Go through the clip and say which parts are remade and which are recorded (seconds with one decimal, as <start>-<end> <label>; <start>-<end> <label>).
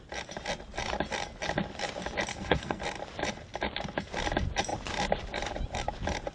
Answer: 0.0-2.3 recorded; 2.3-2.8 remade; 2.8-6.3 recorded